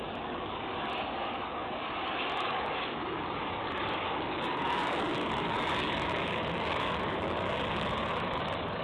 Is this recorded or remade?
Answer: remade